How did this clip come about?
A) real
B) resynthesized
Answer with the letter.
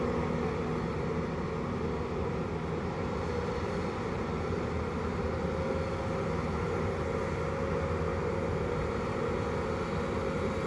A